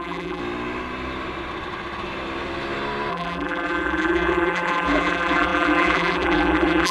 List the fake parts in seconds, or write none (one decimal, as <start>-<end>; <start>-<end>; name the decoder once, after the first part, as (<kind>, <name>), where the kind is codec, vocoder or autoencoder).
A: 0.0-0.4 (vocoder, BigVGAN v2); 3.1-6.9